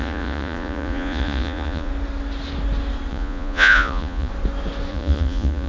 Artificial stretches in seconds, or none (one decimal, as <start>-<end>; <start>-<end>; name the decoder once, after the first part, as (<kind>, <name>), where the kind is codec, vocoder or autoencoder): 0.0-1.9 (vocoder, Vocos); 3.1-4.3; 4.9-5.7